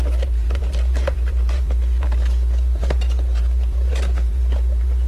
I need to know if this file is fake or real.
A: fake